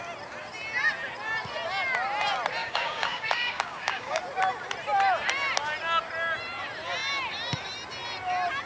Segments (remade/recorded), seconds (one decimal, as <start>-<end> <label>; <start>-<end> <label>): 0.0-2.6 recorded; 2.6-4.2 remade; 4.2-8.7 recorded